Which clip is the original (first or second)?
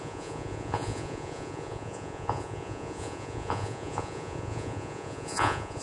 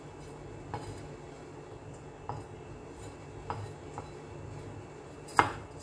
second